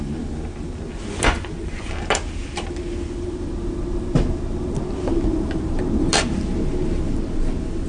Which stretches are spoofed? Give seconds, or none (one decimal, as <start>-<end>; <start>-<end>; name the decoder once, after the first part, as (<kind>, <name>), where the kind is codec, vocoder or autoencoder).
1.3-1.9 (vocoder, Vocos)